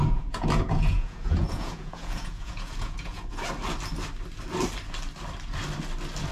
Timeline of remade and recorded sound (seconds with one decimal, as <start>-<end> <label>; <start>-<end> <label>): 0.0-3.3 remade; 3.3-6.3 recorded